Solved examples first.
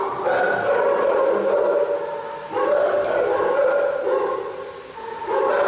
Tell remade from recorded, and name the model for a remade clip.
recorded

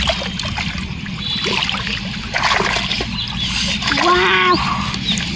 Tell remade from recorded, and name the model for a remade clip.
recorded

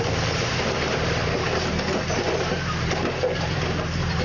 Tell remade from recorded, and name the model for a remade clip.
remade, vocoder, BigVGAN v2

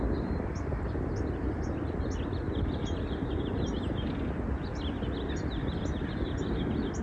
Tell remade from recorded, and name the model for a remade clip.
recorded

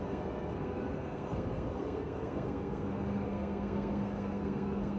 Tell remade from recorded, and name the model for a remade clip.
remade, codec, SNAC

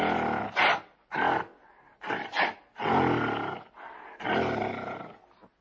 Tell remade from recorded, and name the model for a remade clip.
recorded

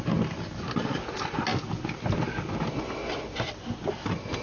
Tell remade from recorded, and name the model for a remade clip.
recorded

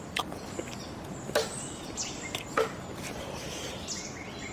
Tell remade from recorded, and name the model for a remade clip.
recorded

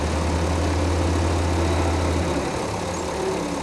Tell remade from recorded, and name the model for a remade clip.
recorded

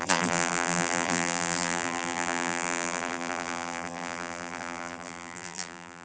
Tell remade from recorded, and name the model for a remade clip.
remade, vocoder, BigVGAN v2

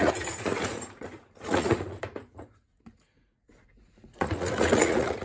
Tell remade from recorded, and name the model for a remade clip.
remade, vocoder, Vocos